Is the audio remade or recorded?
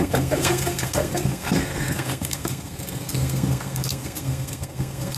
remade